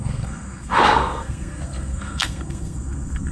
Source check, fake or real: fake